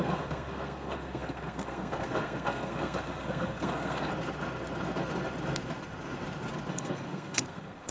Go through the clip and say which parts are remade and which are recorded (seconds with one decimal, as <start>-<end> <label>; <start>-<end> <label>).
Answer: 0.0-4.1 remade; 4.1-6.7 recorded; 6.7-7.9 remade